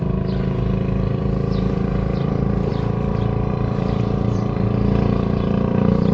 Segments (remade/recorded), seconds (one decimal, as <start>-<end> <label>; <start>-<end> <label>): 0.0-2.7 remade; 2.7-3.5 recorded; 3.5-6.1 remade